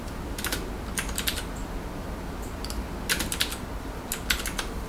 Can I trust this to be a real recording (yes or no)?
yes